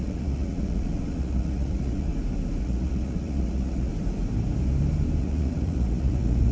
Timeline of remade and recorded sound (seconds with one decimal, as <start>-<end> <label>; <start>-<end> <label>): 0.0-2.1 remade; 2.1-2.6 recorded; 2.6-3.9 remade; 3.9-5.2 recorded; 5.2-6.5 remade